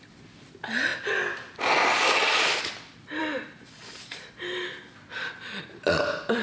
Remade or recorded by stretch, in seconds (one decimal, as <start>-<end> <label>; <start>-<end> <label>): 0.0-6.4 recorded